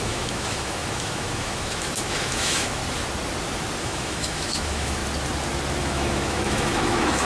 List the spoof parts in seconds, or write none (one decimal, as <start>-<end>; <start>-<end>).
0.0-2.8; 3.8-5.0; 5.8-7.2